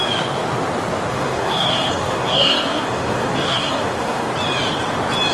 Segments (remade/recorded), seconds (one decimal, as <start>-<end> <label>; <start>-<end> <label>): 0.0-1.1 recorded; 1.1-4.3 remade; 4.3-5.3 recorded